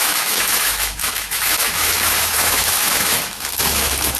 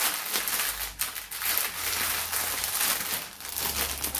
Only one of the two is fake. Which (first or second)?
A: first